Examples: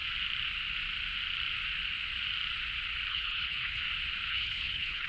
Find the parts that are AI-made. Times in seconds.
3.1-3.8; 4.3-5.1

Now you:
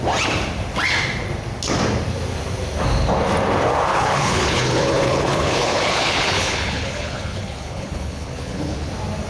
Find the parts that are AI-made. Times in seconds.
3.9-8.9